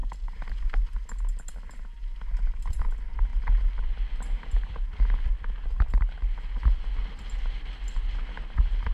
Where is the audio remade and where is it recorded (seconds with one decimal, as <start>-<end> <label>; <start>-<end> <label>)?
0.0-8.9 recorded